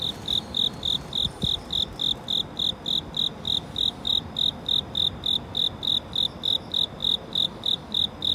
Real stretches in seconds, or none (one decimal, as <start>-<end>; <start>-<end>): 0.0-8.3